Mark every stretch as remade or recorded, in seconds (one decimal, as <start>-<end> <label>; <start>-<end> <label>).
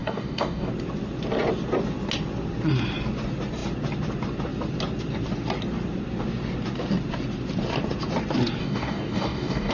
0.0-0.7 remade; 0.7-8.6 recorded; 8.6-9.7 remade